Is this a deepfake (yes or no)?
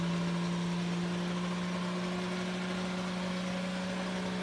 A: no